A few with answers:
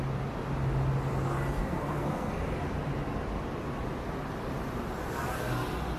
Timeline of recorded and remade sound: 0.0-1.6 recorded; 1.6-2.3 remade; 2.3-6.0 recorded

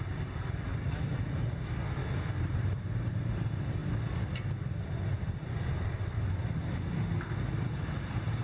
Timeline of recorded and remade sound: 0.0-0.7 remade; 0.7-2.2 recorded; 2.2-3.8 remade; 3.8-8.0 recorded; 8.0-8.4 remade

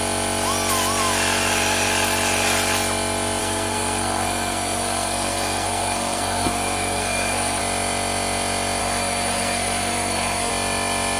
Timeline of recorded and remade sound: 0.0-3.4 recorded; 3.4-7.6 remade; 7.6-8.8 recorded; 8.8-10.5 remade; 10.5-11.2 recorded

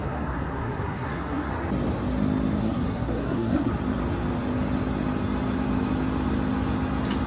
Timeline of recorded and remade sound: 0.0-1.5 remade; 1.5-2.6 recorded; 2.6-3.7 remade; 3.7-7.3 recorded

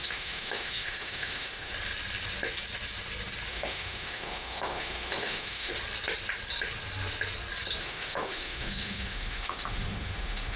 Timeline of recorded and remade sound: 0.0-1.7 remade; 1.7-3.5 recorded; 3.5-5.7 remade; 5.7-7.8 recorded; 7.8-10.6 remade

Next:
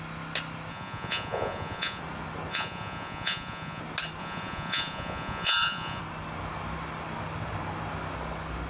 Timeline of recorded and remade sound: 0.0-0.7 recorded; 0.7-2.0 remade; 2.0-2.5 recorded; 2.5-3.8 remade; 3.8-4.2 recorded; 4.2-6.0 remade; 6.0-8.7 recorded

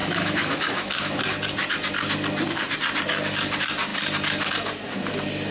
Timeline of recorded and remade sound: 0.0-1.2 remade; 1.2-5.5 recorded

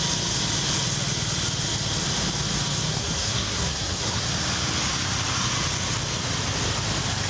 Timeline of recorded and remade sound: 0.0-2.9 recorded; 2.9-4.2 remade; 4.2-7.3 recorded